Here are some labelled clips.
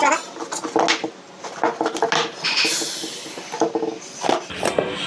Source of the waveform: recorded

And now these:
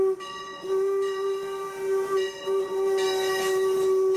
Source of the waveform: recorded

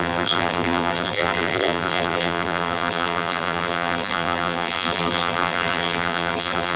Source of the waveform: remade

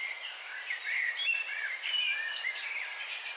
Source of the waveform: remade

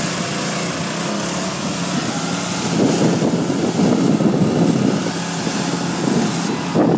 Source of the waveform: recorded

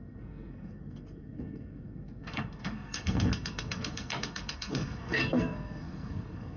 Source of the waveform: remade